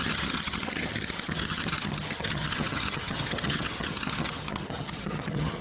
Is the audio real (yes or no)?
no